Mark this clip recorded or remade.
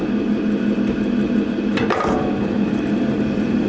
remade